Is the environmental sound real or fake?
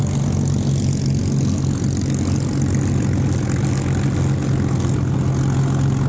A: real